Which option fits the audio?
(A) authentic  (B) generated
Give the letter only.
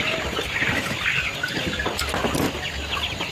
A